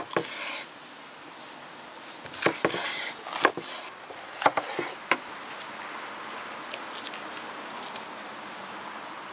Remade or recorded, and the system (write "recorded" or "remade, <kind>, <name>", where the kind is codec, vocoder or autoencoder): recorded